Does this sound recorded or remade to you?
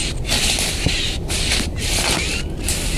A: recorded